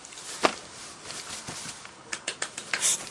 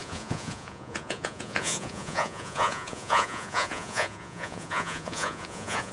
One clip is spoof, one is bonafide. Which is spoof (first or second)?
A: second